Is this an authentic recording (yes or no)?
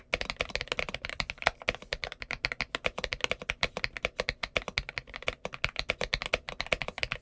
yes